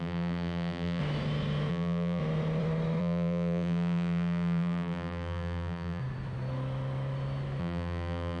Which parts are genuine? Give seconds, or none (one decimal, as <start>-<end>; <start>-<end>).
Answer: 1.0-1.7; 2.2-3.0; 6.0-7.6